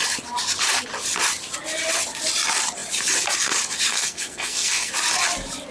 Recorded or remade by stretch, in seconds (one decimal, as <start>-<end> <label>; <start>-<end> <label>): 0.0-3.9 recorded; 3.9-4.9 remade; 4.9-5.7 recorded